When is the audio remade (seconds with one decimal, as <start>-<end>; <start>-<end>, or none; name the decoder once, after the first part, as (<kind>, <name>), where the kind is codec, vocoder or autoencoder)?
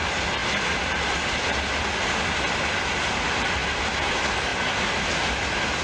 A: none